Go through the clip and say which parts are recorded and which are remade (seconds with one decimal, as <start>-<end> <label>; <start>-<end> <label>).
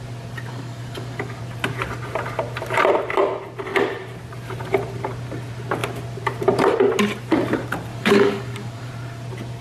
0.0-0.5 recorded; 0.5-1.4 remade; 1.4-7.9 recorded; 7.9-8.9 remade; 8.9-9.6 recorded